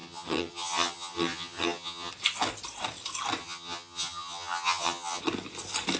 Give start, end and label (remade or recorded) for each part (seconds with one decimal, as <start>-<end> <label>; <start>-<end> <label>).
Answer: 0.0-2.1 remade; 2.1-3.4 recorded; 3.4-5.2 remade; 5.2-6.0 recorded